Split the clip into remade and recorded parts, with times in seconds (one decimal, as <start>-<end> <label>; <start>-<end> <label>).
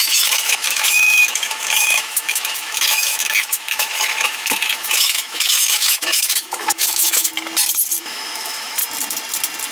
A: 0.0-7.3 remade; 7.3-8.0 recorded; 8.0-8.8 remade; 8.8-9.7 recorded